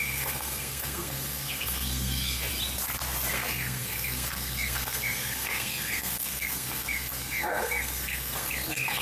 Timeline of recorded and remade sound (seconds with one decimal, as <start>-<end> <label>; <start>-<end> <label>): 0.0-2.5 remade; 2.5-3.3 recorded; 3.3-9.0 remade